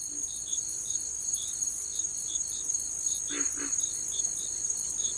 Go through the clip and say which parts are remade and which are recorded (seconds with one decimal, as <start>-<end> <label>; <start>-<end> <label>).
0.0-5.2 recorded